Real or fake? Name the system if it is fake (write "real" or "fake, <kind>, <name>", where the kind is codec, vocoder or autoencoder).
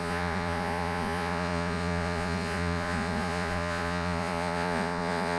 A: fake, vocoder, Vocos